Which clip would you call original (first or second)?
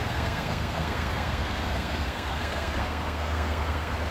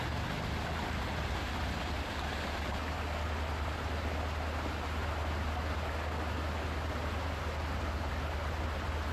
second